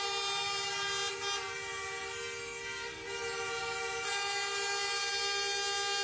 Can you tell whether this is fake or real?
real